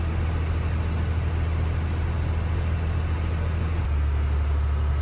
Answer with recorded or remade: recorded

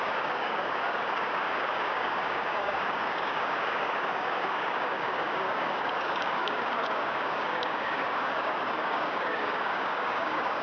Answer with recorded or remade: remade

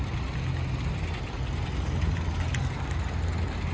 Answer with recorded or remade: recorded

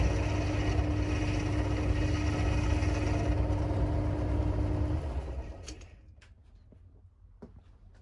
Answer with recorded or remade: recorded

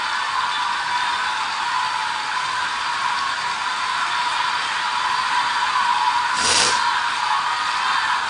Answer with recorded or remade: recorded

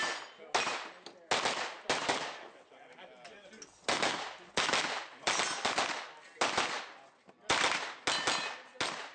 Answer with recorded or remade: recorded